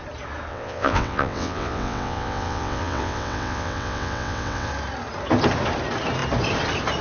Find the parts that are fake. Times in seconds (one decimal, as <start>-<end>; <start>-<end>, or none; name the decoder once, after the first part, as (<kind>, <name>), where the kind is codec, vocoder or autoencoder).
0.5-4.7 (vocoder, WaveNeXt)